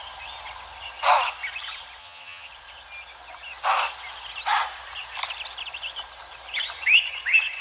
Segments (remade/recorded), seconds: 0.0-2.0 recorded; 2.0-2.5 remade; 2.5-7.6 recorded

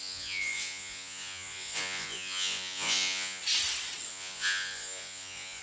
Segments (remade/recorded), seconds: 0.0-3.4 remade; 3.4-4.1 recorded; 4.1-5.6 remade

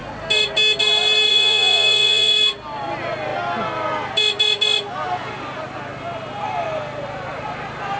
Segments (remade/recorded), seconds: 0.0-1.3 recorded; 1.3-2.3 remade; 2.3-8.0 recorded

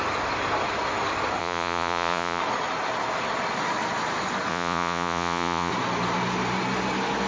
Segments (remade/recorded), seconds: 0.0-1.4 recorded; 1.4-2.4 remade; 2.4-4.5 recorded; 4.5-5.7 remade; 5.7-7.3 recorded

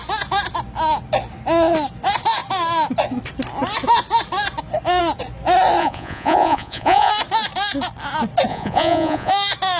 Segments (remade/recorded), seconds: 0.0-5.8 recorded; 5.8-7.1 remade; 7.1-8.5 recorded; 8.5-9.3 remade; 9.3-9.8 recorded

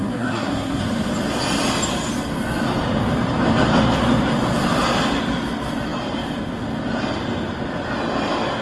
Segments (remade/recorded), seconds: 0.0-0.8 remade; 0.8-8.6 recorded

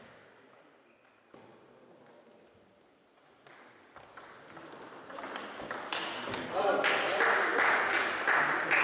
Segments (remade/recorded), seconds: 0.0-5.9 recorded; 5.9-6.5 remade; 6.5-7.5 recorded; 7.5-8.1 remade; 8.1-8.8 recorded

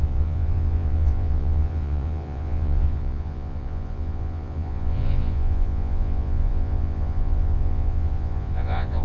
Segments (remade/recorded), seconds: 0.0-9.0 remade